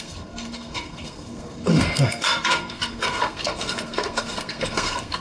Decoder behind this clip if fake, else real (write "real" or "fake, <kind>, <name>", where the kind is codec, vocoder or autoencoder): fake, codec, SNAC